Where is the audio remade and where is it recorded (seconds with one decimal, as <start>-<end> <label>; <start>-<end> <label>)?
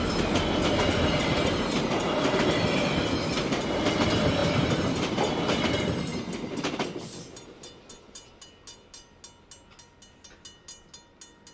0.0-11.5 recorded